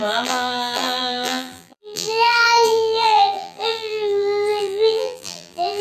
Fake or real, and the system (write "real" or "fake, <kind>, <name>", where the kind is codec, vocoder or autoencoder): fake, vocoder, BigVGAN v2